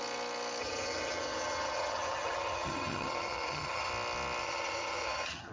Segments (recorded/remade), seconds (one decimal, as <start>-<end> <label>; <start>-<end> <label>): 0.0-0.6 recorded; 0.6-3.9 remade; 3.9-4.4 recorded; 4.4-5.5 remade